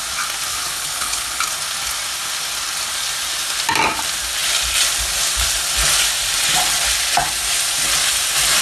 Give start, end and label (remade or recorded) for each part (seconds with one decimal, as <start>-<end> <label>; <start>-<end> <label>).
0.0-0.5 recorded; 0.5-1.4 remade; 1.4-8.6 recorded